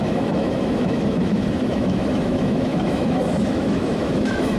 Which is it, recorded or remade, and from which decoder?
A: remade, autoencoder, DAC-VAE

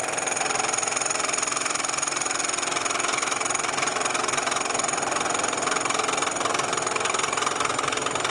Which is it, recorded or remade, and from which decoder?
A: recorded